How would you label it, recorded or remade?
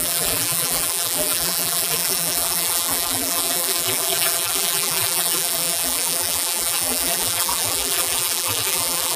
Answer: remade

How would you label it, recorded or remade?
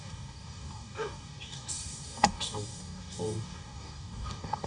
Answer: remade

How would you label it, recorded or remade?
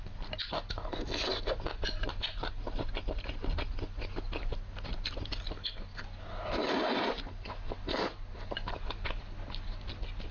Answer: recorded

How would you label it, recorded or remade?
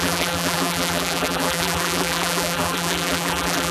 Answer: remade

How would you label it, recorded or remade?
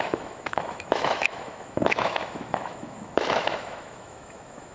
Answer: remade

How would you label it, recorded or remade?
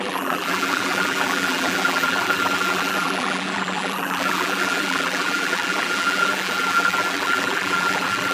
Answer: remade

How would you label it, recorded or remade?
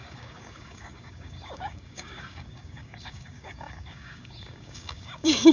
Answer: remade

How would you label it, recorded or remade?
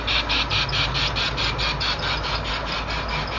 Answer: recorded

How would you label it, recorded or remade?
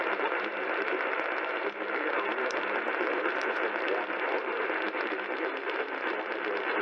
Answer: remade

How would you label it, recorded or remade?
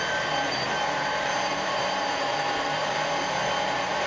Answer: remade